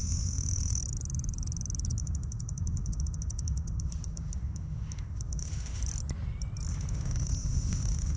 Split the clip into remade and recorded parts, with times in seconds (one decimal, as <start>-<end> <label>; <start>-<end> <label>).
0.0-0.8 remade; 0.8-2.0 recorded; 2.0-5.8 remade; 5.8-6.7 recorded; 6.7-8.2 remade